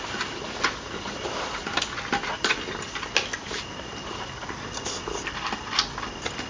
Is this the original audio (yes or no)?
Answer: yes